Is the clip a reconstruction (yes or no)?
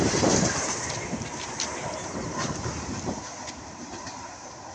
yes